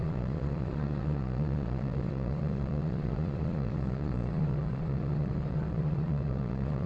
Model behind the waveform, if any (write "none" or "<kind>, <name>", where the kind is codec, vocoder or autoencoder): vocoder, Vocos